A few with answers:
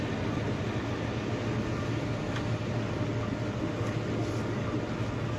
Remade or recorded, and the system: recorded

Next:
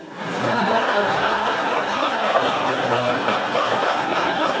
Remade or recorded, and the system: remade, codec, SNAC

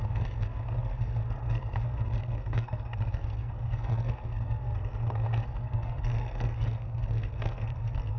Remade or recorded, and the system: remade, codec, SNAC